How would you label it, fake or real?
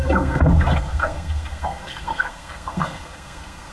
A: fake